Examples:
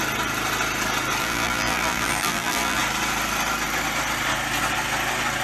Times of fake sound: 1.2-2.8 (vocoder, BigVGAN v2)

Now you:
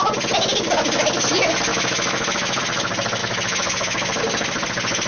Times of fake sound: 1.7-2.6 (autoencoder, DAC-VAE); 3.2-4.2

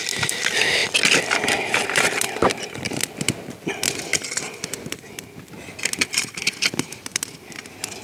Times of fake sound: none

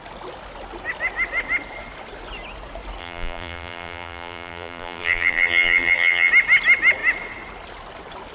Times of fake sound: 3.0-6.3 (vocoder, BigVGAN v2)

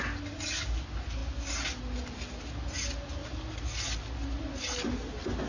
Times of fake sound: none

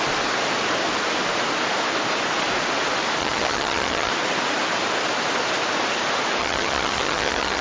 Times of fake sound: 3.2-4.1 (vocoder, HiFi-GAN); 6.4-7.6

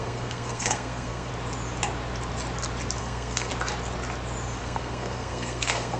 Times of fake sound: 0.0-1.3 (codec, SNAC); 3.0-3.5; 4.6-6.0

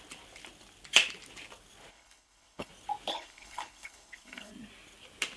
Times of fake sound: 1.9-2.7 (codec, HILCodec); 3.1-4.5